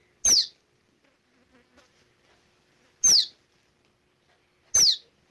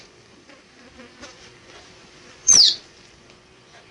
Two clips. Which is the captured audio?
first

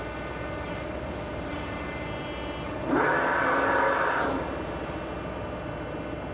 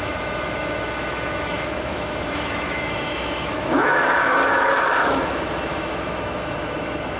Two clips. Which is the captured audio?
first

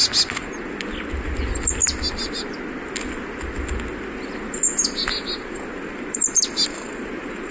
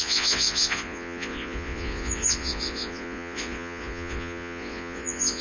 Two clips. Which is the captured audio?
first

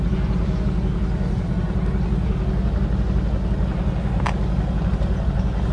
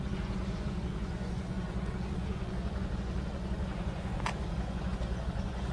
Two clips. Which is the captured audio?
first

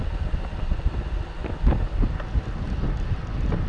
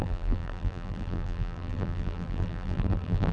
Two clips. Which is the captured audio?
first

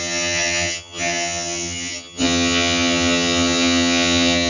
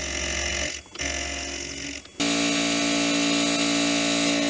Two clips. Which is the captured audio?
second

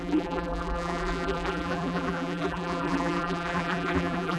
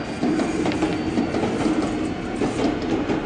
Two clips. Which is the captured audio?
second